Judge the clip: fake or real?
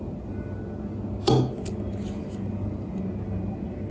real